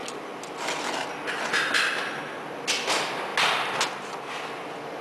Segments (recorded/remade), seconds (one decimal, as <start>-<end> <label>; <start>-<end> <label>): 0.0-5.0 recorded